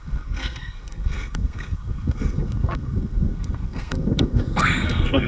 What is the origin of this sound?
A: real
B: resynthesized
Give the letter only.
B